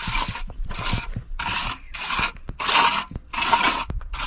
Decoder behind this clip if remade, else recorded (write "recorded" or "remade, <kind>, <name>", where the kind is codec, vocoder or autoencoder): recorded